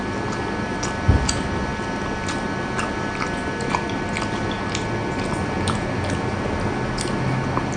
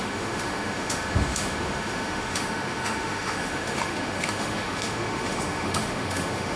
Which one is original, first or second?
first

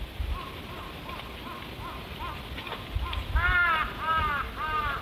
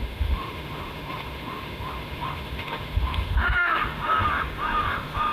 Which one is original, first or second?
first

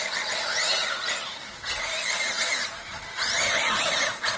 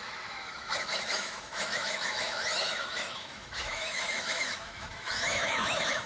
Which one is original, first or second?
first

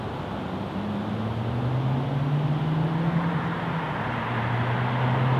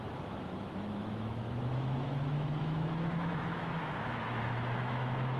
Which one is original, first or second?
first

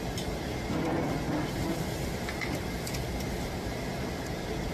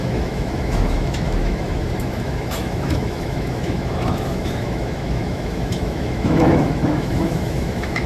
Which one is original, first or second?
first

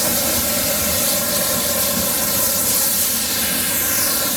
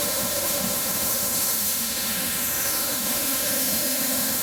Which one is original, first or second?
first